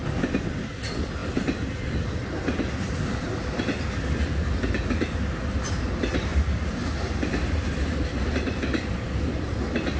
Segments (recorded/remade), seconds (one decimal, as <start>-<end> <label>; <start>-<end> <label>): 0.0-6.3 recorded; 6.3-7.2 remade; 7.2-10.0 recorded